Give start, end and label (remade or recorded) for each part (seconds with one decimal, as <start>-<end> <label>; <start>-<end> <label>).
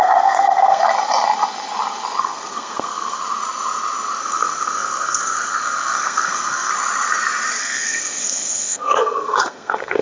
0.0-0.8 remade; 0.8-2.2 recorded; 2.2-3.2 remade; 3.2-4.2 recorded; 4.2-6.7 remade; 6.7-7.6 recorded; 7.6-10.0 remade